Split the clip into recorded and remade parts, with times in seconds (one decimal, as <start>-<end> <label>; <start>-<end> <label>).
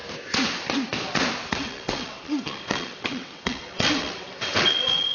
0.0-1.5 recorded; 1.5-5.1 remade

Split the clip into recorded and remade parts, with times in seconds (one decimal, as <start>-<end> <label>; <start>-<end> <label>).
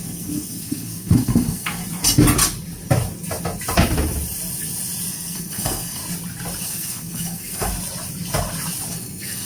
0.0-1.8 remade; 1.8-5.1 recorded; 5.1-6.0 remade; 6.0-6.6 recorded; 6.6-7.7 remade; 7.7-8.9 recorded; 8.9-9.5 remade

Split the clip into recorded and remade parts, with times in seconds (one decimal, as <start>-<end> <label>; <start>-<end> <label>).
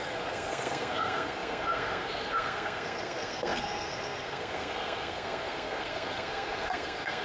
0.0-7.2 remade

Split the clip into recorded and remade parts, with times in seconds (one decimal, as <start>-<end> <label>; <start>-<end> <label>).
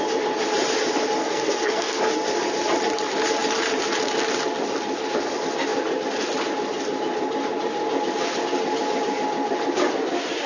0.0-1.2 recorded; 1.2-2.0 remade; 2.0-10.5 recorded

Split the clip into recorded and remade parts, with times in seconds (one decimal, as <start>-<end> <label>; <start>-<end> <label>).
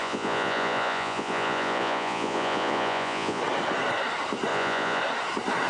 0.0-3.4 remade; 3.4-4.5 recorded; 4.5-5.0 remade; 5.0-5.7 recorded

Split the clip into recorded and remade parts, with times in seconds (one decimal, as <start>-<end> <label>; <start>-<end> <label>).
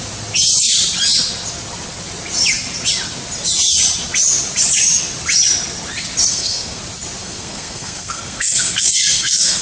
0.0-6.3 recorded; 6.3-6.8 remade; 6.8-7.2 recorded; 7.2-9.6 remade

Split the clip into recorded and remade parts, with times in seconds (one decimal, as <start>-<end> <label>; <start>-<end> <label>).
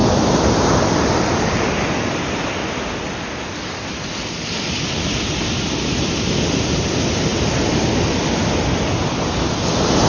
0.0-2.6 recorded; 2.6-4.9 remade; 4.9-10.1 recorded